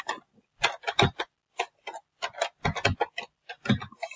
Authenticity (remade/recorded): recorded